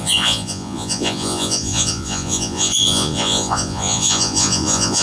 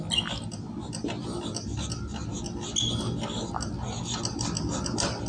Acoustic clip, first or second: second